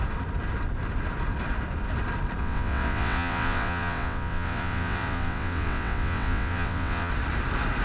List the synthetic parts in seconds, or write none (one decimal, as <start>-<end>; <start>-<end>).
2.4-7.1